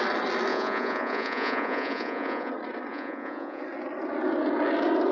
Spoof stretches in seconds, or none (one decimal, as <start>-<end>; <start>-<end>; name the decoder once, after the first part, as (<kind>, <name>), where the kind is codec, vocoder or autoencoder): 0.5-2.5 (vocoder, Vocos); 2.9-3.6